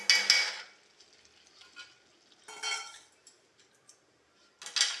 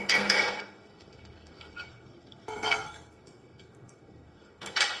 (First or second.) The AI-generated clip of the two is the second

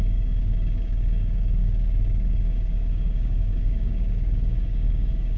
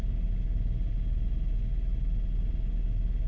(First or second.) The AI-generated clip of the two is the first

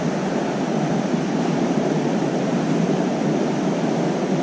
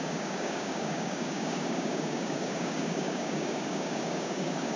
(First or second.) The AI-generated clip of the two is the second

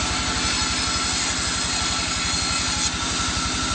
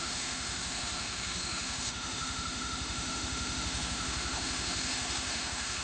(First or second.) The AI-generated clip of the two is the second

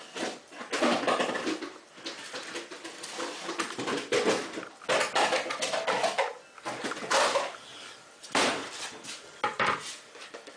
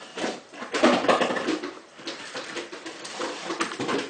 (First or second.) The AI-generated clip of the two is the second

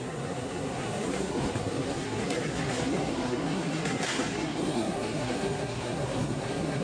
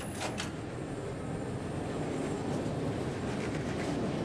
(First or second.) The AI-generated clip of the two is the first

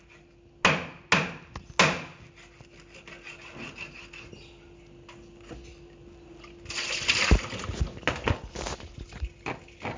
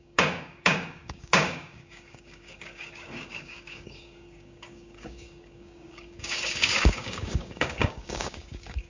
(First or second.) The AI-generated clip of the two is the second